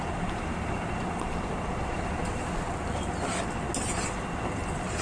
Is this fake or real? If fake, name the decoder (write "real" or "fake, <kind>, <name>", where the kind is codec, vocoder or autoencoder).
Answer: real